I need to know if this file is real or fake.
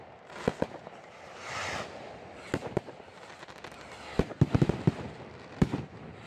real